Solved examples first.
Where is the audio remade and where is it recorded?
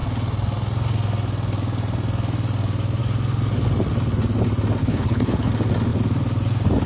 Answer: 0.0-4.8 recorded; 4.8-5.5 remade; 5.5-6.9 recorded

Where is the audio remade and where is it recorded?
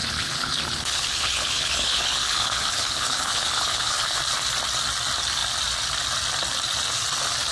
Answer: 0.0-4.2 remade; 4.2-7.5 recorded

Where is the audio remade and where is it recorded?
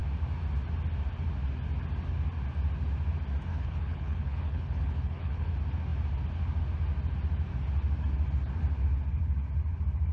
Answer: 0.0-3.5 recorded; 3.5-5.5 remade; 5.5-10.1 recorded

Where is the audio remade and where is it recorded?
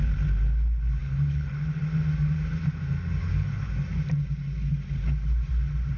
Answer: 0.0-1.0 recorded; 1.0-1.8 remade; 1.8-3.2 recorded; 3.2-3.7 remade; 3.7-6.0 recorded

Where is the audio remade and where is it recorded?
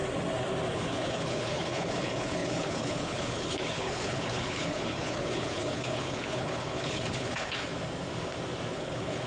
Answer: 0.0-0.7 recorded; 0.7-7.7 remade; 7.7-8.7 recorded; 8.7-9.3 remade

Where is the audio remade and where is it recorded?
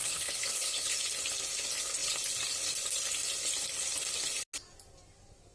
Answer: 0.0-0.9 remade; 0.9-5.5 recorded